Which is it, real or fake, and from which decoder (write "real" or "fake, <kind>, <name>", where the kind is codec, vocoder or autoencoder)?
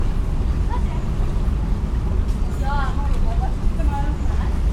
real